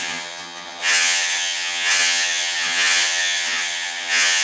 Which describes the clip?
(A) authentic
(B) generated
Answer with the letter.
B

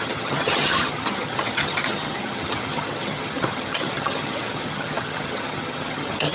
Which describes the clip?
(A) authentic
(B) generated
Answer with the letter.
B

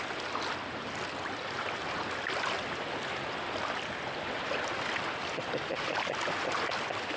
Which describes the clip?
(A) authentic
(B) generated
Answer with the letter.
A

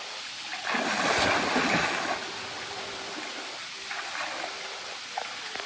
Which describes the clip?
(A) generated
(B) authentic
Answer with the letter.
B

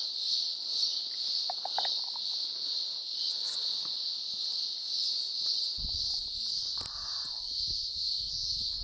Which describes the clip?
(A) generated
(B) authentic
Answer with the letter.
B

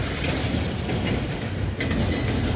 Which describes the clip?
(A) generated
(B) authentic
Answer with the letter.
B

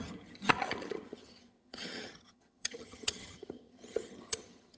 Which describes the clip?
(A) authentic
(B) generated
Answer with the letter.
B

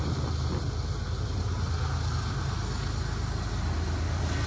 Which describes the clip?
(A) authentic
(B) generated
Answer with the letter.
A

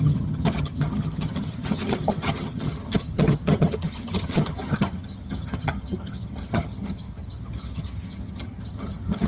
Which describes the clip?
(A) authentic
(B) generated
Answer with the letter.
B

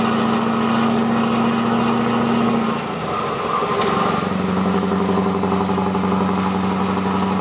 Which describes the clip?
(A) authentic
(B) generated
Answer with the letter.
A